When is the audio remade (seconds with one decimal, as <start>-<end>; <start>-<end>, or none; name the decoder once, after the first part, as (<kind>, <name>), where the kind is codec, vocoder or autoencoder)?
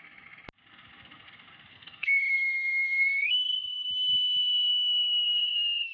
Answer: 1.7-3.9 (codec, SNAC); 4.7-5.9